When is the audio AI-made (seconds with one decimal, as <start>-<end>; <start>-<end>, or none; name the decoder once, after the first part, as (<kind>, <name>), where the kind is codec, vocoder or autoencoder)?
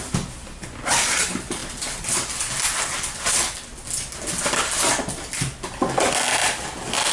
1.6-2.1 (vocoder, BigVGAN v2); 6.4-7.1